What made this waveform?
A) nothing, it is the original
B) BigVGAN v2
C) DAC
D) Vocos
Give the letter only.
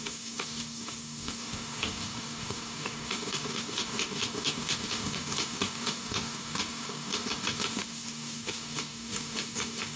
C